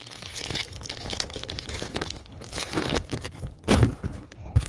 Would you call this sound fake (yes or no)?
yes